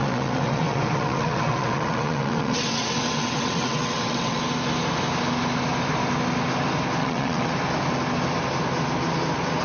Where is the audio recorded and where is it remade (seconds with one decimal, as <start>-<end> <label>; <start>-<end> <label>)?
0.0-4.4 remade; 4.4-7.0 recorded; 7.0-7.5 remade; 7.5-9.6 recorded